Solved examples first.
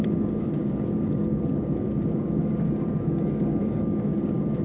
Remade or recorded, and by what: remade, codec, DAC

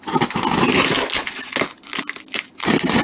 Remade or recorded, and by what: recorded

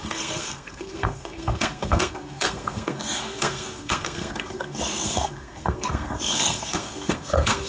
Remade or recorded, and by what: remade, codec, SNAC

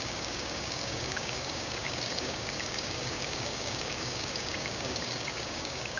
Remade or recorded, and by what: remade, codec, DAC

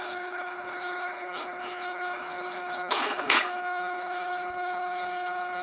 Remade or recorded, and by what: remade, codec, HILCodec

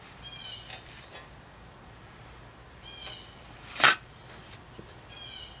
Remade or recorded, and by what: recorded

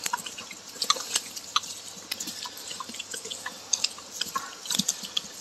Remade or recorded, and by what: recorded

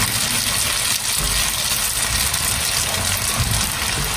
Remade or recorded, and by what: recorded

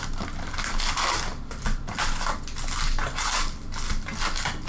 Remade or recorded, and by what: recorded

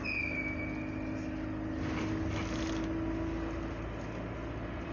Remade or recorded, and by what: recorded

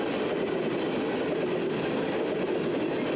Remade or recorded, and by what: recorded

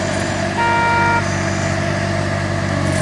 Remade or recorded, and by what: recorded